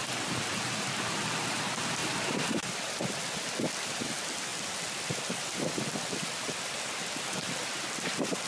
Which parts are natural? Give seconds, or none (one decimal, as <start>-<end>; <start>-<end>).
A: none